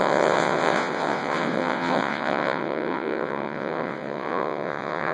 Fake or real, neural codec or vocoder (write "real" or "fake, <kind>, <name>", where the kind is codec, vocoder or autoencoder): fake, vocoder, WaveNeXt